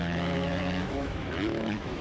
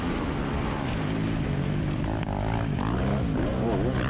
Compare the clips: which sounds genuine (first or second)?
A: second